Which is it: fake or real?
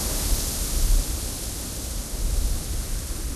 real